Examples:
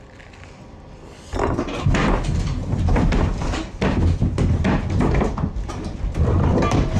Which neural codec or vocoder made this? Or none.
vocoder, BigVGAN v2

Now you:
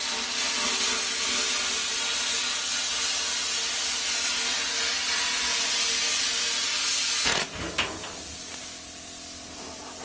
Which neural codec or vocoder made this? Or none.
none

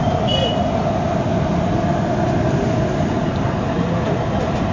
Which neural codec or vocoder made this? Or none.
none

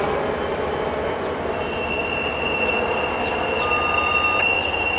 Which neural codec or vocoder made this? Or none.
none